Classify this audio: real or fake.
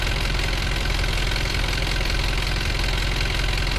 real